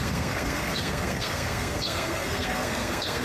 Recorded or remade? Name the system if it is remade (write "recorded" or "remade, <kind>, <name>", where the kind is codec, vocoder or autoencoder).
remade, codec, SNAC